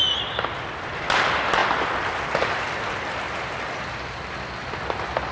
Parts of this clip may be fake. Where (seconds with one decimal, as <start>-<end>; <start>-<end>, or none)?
none